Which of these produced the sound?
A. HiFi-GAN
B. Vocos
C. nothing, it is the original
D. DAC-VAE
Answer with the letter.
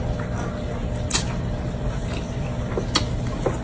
C